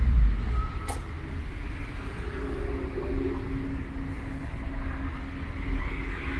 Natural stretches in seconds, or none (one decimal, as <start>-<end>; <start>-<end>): 0.0-4.1; 4.6-6.4